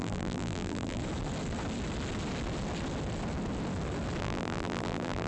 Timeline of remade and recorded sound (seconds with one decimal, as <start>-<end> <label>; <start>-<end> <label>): 0.0-1.0 remade; 1.0-4.2 recorded; 4.2-5.3 remade